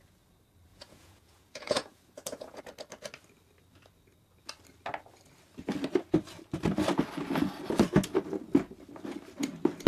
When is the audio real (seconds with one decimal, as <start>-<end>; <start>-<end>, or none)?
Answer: 0.0-0.7; 2.6-9.9